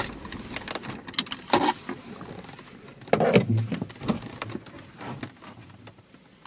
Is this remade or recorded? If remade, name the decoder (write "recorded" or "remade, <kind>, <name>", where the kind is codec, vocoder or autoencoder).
recorded